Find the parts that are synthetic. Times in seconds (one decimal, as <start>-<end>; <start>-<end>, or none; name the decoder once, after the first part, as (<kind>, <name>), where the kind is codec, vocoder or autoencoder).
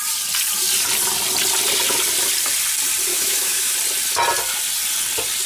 3.1-3.7 (autoencoder, DAC-VAE)